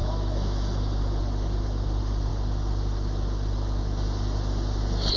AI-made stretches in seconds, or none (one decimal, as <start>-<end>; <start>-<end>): 0.0-1.2